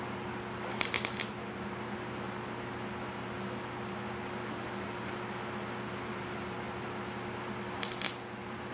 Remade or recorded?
recorded